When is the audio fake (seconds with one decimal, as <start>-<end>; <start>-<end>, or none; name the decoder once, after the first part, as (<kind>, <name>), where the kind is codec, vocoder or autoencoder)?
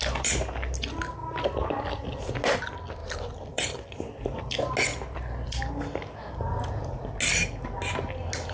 1.2-2.3 (vocoder, BigVGAN v2); 3.0-4.4; 4.9-5.6